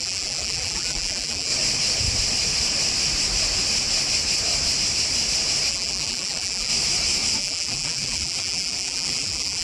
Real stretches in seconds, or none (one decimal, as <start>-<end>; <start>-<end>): 1.5-5.7; 6.7-7.4